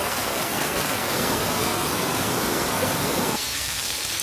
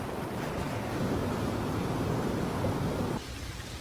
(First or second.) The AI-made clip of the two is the first